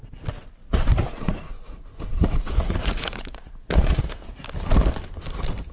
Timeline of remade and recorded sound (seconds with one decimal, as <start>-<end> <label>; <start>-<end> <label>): 0.0-0.6 recorded; 0.6-4.0 remade; 4.0-5.7 recorded